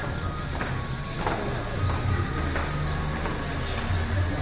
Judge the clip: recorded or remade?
recorded